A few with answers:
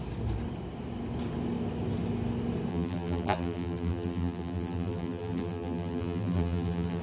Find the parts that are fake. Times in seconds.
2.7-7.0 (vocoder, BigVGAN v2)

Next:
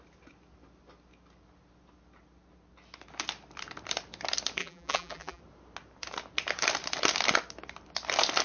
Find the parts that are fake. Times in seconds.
4.6-5.4 (vocoder, BigVGAN v2)